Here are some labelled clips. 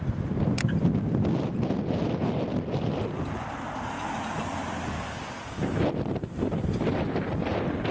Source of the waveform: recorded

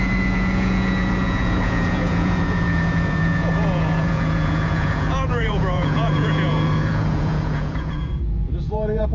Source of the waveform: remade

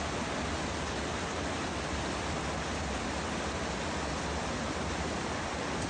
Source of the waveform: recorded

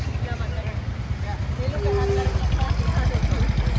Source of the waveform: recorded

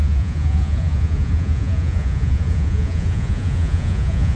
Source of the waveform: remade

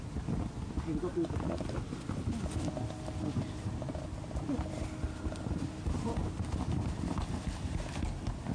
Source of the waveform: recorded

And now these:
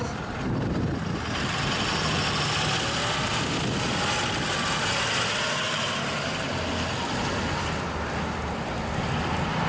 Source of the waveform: recorded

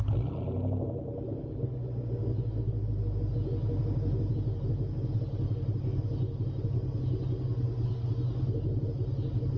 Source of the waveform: recorded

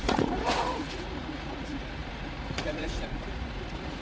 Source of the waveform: remade